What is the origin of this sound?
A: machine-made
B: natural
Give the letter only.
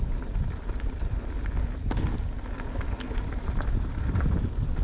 B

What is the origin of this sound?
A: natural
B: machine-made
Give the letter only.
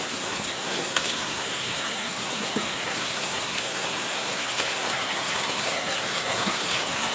B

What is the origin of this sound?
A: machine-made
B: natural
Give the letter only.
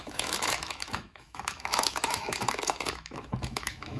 A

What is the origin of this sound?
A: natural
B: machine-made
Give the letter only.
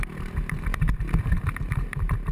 B